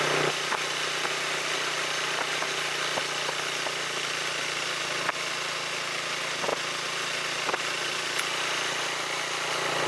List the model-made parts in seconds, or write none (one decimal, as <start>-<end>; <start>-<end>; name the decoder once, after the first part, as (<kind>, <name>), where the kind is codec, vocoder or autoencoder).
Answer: none